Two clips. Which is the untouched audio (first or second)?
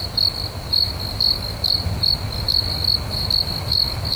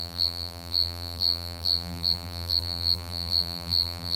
first